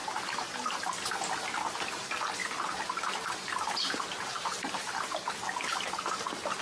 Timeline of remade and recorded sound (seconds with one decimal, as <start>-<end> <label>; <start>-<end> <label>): 0.0-1.3 remade; 1.3-2.4 recorded; 2.4-5.3 remade; 5.3-6.6 recorded